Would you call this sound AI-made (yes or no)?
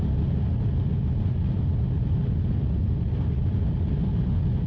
no